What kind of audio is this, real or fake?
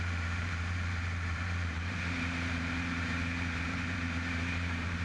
fake